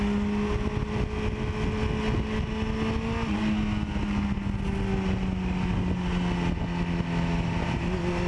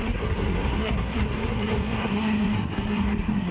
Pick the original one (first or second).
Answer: first